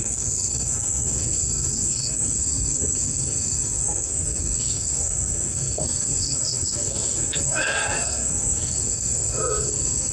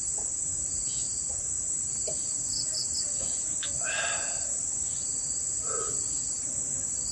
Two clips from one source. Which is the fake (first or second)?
first